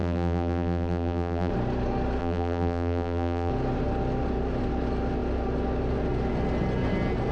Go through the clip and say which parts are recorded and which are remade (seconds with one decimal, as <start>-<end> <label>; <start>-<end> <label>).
0.0-1.5 remade; 1.5-2.2 recorded; 2.2-3.5 remade; 3.5-7.3 recorded